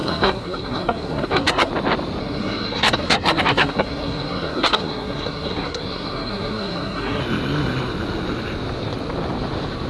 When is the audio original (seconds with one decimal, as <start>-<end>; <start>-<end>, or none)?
1.7-2.2; 7.2-9.9